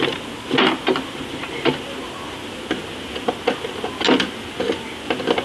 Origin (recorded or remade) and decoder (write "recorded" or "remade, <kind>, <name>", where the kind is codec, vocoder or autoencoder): recorded